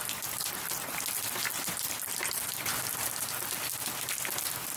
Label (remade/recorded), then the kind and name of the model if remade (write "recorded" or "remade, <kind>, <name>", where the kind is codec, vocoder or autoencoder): recorded